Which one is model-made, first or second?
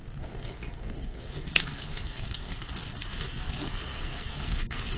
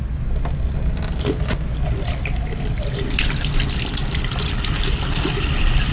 first